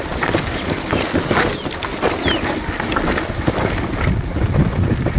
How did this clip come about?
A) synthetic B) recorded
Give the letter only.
B